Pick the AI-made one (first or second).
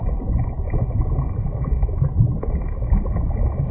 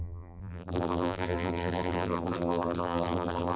second